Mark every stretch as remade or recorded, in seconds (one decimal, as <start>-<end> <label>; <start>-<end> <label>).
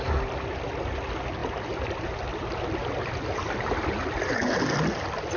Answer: 0.0-5.4 recorded